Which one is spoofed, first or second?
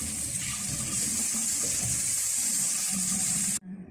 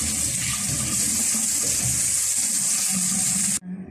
first